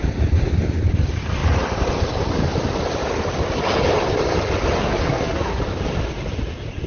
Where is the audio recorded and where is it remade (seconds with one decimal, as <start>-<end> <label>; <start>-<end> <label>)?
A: 0.0-4.8 recorded; 4.8-5.6 remade; 5.6-6.9 recorded